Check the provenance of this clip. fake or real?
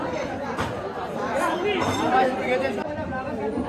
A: real